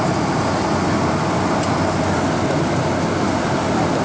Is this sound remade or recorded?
recorded